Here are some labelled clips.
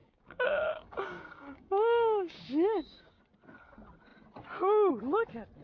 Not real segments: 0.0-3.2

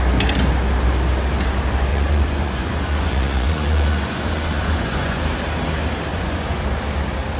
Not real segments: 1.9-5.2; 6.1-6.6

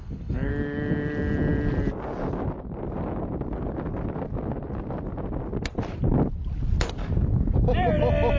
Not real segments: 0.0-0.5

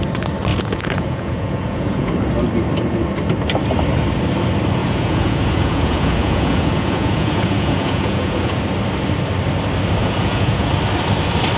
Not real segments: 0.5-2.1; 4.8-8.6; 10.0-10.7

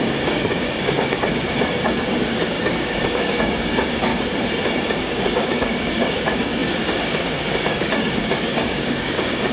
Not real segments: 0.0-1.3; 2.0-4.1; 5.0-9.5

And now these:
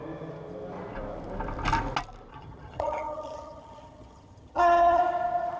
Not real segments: 2.3-5.0

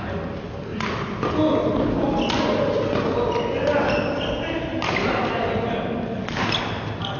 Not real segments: none